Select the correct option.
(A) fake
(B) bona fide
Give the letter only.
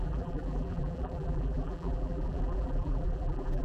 A